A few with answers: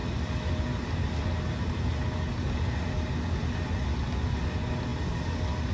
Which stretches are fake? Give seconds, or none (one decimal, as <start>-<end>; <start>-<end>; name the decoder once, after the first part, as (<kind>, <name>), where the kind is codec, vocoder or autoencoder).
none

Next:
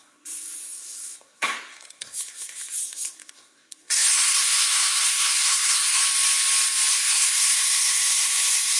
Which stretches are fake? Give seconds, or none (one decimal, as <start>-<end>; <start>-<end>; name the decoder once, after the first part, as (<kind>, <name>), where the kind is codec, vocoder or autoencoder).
0.0-6.0 (codec, SNAC); 6.9-8.8

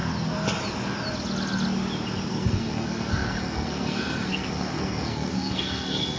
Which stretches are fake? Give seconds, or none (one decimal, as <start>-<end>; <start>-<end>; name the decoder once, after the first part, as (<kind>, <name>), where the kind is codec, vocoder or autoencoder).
2.3-6.2 (codec, SNAC)